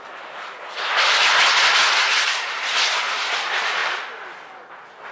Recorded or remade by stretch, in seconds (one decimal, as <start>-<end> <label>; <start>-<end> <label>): 0.0-5.1 recorded